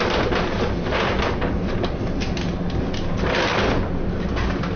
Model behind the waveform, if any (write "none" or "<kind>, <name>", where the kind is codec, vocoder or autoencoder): none